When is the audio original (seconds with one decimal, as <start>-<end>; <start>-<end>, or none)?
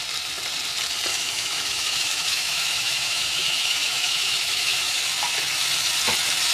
0.0-1.1; 5.0-6.5